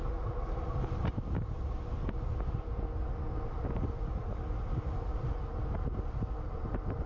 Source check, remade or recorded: recorded